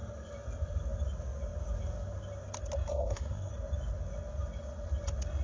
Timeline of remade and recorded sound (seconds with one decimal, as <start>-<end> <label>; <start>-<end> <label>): 0.0-2.9 recorded; 2.9-3.5 remade; 3.5-5.4 recorded